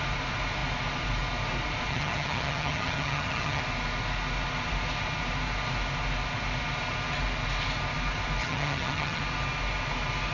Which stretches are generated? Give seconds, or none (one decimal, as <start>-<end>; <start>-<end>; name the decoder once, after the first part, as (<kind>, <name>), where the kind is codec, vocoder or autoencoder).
1.9-3.6 (vocoder, HiFi-GAN); 8.4-9.2